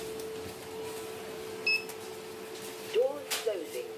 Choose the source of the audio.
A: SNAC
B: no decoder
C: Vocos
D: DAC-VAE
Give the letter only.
B